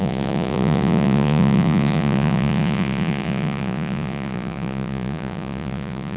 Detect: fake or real fake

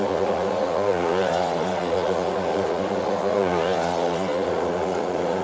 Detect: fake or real fake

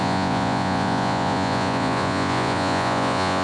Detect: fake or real fake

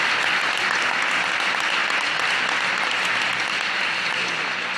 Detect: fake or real real